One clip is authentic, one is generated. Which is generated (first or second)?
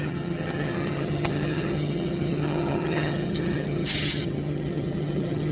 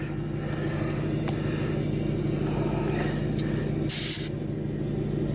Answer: first